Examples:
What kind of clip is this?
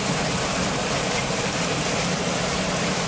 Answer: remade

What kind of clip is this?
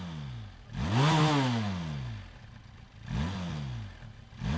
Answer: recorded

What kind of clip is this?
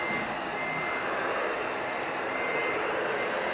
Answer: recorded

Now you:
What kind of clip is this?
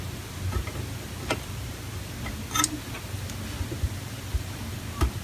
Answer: recorded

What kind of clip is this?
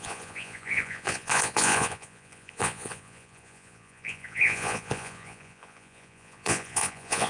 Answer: remade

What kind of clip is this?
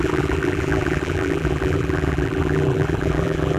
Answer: remade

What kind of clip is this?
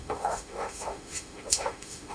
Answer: remade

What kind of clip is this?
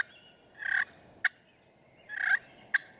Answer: recorded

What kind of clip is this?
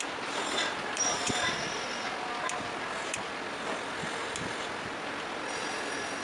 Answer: recorded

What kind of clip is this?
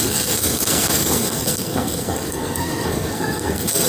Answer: remade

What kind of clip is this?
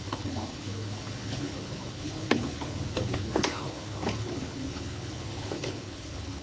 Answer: remade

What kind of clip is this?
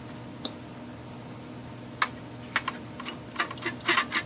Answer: recorded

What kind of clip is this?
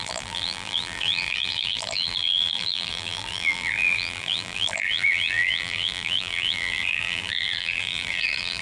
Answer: remade